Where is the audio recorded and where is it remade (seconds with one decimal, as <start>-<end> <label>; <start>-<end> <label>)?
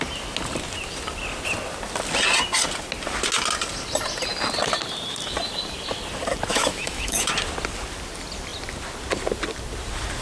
0.0-6.5 recorded; 6.5-7.3 remade; 7.3-10.2 recorded